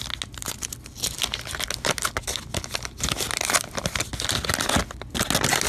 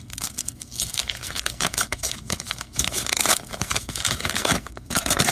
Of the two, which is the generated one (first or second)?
second